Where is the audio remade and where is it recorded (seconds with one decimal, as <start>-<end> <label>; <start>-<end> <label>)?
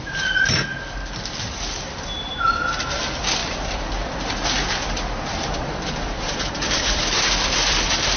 0.0-0.7 remade; 0.7-1.4 recorded; 1.4-8.2 remade